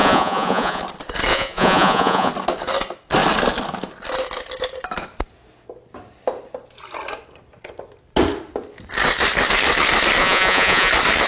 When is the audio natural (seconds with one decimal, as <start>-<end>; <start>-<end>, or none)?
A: 0.8-1.3; 2.3-10.2; 10.9-11.3